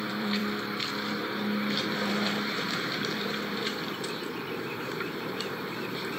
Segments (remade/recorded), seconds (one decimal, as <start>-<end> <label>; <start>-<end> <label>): 0.0-0.4 remade; 0.4-1.7 recorded; 1.7-6.2 remade